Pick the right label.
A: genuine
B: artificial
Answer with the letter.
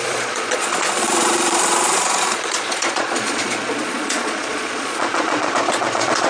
B